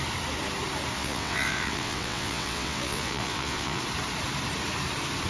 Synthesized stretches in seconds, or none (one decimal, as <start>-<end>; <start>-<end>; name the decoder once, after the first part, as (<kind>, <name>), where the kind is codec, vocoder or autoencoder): 1.0-3.8 (vocoder, WaveNeXt)